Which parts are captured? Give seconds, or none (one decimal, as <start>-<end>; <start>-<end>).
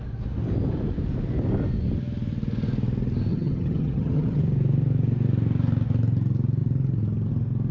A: 0.0-3.3; 4.4-7.7